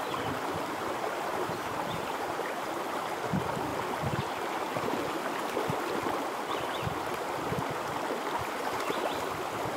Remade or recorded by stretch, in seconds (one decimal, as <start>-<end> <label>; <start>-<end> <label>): 0.0-1.3 recorded; 1.3-2.7 remade; 2.7-9.8 recorded